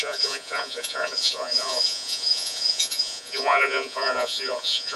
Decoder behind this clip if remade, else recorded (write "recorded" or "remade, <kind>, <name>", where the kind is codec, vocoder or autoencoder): remade, vocoder, Vocos